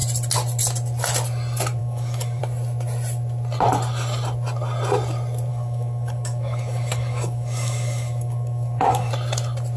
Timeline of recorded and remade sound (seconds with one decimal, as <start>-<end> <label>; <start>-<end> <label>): 0.0-1.8 recorded; 1.8-2.4 remade; 2.4-5.5 recorded; 5.5-9.1 remade; 9.1-9.8 recorded